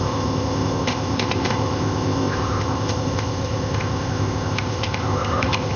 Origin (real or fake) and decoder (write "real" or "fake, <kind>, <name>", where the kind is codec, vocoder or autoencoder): fake, codec, ZipCodec